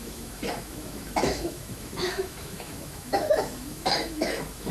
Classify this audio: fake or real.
fake